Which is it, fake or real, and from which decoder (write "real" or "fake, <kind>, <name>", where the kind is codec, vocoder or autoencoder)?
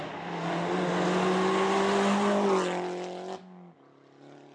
real